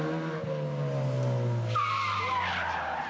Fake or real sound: real